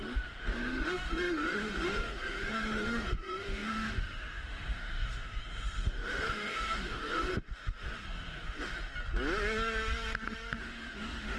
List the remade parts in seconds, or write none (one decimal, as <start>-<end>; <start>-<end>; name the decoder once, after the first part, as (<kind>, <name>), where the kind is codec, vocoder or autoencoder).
0.0-8.9 (autoencoder, DAC-VAE); 10.6-11.4